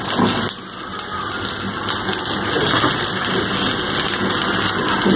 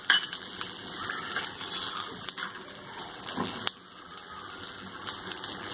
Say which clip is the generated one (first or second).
second